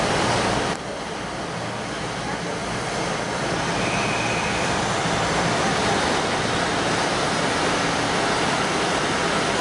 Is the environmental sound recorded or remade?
recorded